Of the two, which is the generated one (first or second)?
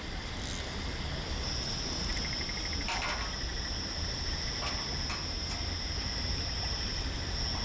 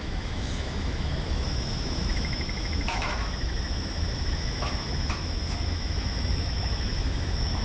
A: second